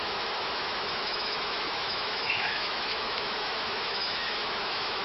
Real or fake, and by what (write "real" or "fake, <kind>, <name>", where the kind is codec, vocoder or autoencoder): fake, autoencoder, DAC-VAE